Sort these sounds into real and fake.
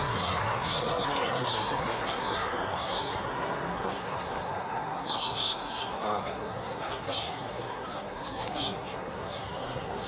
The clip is fake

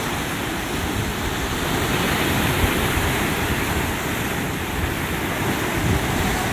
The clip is real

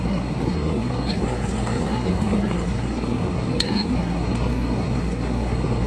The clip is fake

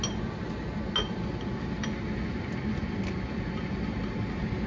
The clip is real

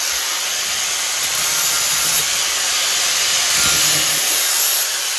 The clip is real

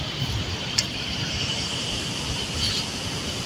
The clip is fake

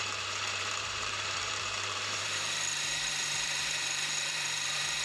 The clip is fake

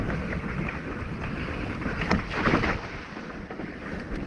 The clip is real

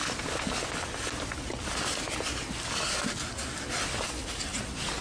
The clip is real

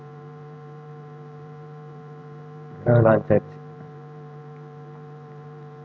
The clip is fake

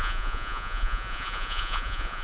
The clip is fake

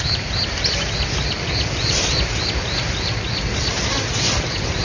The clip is real